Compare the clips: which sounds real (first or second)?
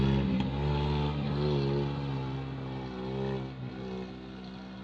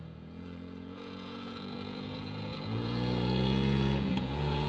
first